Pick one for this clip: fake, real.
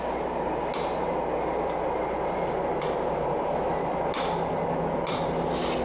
real